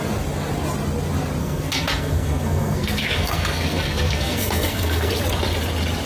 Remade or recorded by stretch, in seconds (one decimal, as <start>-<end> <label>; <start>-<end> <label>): 0.0-1.4 recorded; 1.4-5.1 remade; 5.1-6.1 recorded